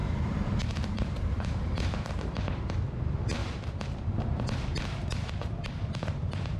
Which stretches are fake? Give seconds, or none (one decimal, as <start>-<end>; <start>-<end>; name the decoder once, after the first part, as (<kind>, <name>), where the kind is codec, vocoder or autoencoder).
0.0-2.7 (vocoder, BigVGAN v2); 3.4-6.6